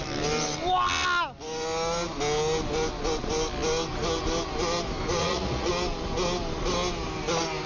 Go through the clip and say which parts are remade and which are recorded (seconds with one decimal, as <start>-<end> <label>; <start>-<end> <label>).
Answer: 0.0-5.2 recorded; 5.2-5.7 remade; 5.7-7.7 recorded